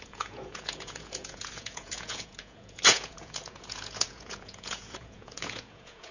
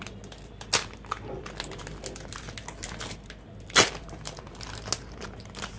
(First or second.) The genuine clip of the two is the second